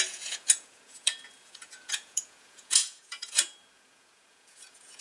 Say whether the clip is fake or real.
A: fake